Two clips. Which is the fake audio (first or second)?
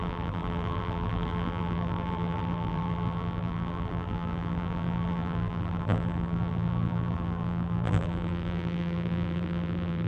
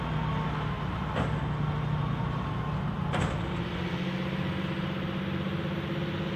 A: first